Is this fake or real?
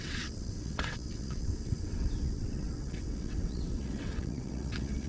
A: fake